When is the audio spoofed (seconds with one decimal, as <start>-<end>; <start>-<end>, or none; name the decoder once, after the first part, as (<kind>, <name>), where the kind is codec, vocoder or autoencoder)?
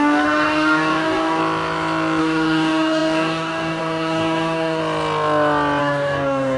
0.0-1.4 (codec, DAC); 2.2-4.8; 5.8-6.6